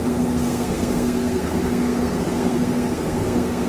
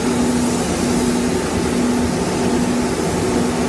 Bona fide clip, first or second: second